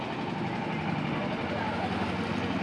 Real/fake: real